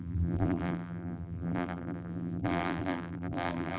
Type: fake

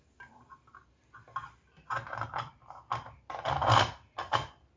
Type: real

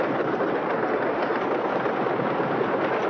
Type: real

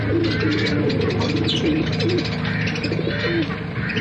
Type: real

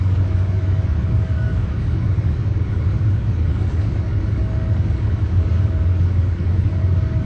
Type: fake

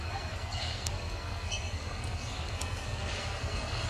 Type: fake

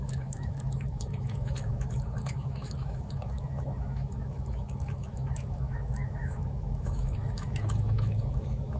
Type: fake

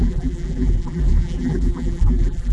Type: fake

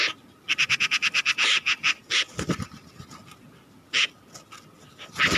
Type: real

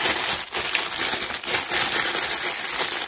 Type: real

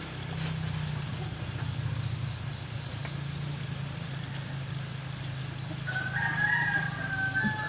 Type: real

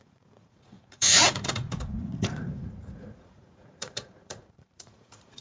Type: fake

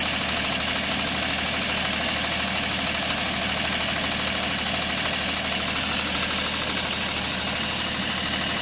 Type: real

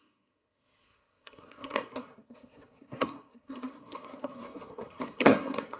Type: fake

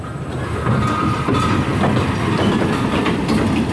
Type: fake